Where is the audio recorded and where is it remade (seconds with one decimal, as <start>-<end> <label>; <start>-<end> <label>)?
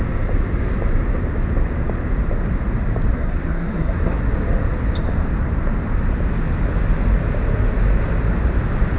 0.0-3.1 recorded; 3.1-4.2 remade; 4.2-9.0 recorded